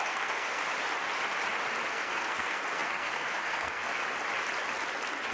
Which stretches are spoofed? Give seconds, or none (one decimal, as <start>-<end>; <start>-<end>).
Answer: 0.0-0.6; 1.9-4.0